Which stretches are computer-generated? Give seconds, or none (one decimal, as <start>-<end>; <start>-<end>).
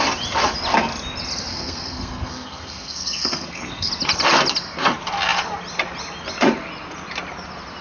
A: 1.5-3.9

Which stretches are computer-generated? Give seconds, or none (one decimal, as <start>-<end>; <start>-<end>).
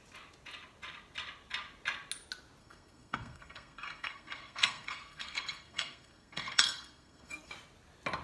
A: 2.6-7.5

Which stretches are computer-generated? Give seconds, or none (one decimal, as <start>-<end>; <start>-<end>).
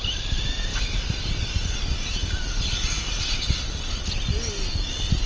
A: none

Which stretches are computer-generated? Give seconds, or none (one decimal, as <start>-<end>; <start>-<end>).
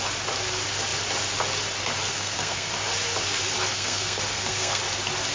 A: 2.1-2.7; 3.7-4.8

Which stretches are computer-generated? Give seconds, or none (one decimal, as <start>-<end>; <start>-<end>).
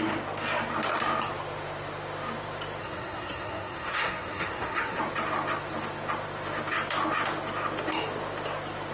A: 2.8-5.0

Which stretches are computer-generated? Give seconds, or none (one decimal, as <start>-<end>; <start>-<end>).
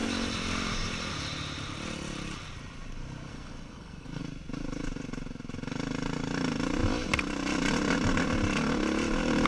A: 3.3-4.2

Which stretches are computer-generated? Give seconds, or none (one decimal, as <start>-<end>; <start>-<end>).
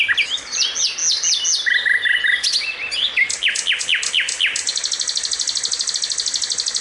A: none